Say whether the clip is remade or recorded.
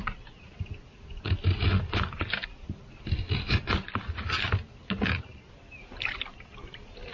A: recorded